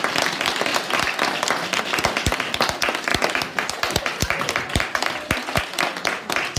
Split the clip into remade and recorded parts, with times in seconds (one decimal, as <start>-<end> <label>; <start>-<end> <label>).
0.0-3.1 recorded; 3.1-5.6 remade; 5.6-6.6 recorded